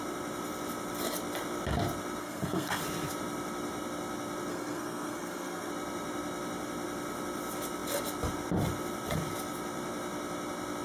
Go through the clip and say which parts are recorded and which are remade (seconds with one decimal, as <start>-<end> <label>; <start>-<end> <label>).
0.0-2.2 recorded; 2.2-2.8 remade; 2.8-4.5 recorded; 4.5-5.7 remade; 5.7-10.8 recorded